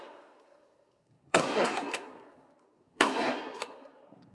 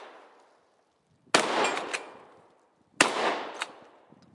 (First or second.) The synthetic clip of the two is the first